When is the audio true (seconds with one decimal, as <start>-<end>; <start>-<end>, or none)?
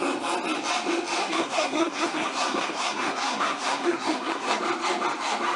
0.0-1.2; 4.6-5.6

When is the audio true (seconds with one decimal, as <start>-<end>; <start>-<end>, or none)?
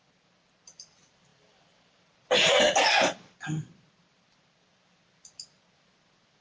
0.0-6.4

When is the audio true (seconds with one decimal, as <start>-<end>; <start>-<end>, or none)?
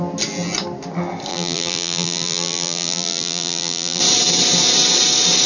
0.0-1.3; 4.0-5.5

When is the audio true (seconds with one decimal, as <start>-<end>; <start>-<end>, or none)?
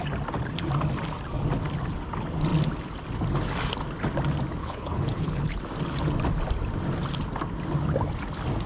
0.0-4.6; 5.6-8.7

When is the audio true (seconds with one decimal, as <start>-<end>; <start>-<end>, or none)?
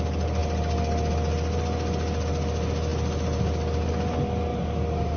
0.0-4.5